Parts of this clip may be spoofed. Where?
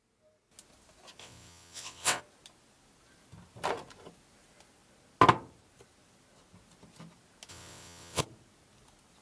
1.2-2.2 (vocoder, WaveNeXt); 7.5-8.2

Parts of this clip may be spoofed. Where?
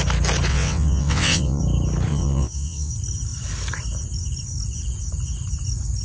0.5-1.6 (vocoder, WaveNeXt); 2.1-2.9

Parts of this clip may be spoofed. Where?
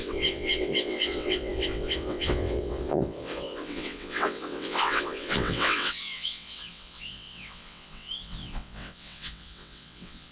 0.0-10.3 (vocoder, WaveNeXt)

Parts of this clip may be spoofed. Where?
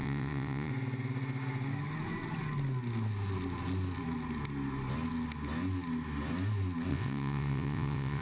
0.0-0.7 (vocoder, WaveNeXt); 6.9-8.2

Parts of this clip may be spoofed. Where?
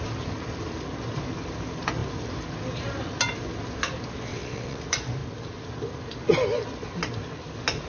4.3-4.8 (vocoder, WaveNeXt)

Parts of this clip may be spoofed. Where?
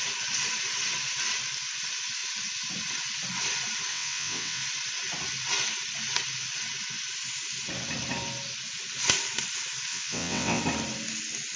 3.9-4.6 (vocoder, WaveNeXt); 9.9-10.6